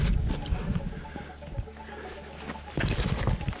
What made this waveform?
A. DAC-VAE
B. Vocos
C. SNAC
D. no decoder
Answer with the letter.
D